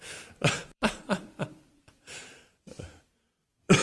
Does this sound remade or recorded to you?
remade